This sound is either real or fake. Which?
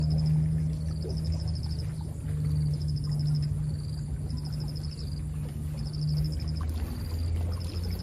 real